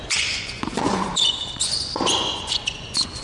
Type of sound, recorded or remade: remade